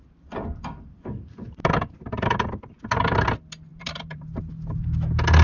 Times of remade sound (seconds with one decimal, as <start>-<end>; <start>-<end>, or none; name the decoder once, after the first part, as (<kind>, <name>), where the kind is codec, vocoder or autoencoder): 3.7-4.4 (vocoder, BigVGAN v2)